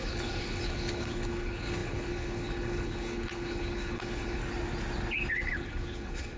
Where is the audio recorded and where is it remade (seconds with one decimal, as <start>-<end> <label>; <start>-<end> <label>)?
0.0-4.4 remade; 4.4-5.3 recorded; 5.3-6.4 remade